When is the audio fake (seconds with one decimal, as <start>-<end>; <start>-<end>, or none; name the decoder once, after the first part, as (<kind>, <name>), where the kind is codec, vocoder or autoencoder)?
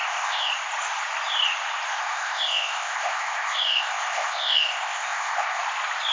0.0-0.5 (codec, ZipCodec); 1.9-5.6